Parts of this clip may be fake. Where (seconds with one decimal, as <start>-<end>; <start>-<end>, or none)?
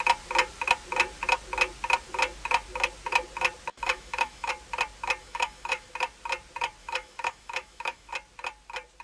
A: 3.7-4.5; 5.2-5.9; 6.8-8.1